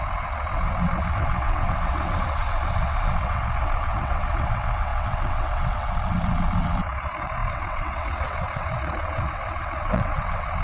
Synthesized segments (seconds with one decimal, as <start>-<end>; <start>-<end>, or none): 0.0-10.6